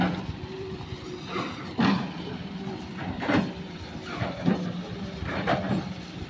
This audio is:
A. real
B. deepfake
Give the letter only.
B